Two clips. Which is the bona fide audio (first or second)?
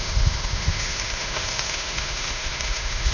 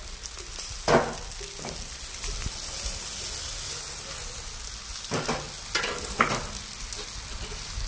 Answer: second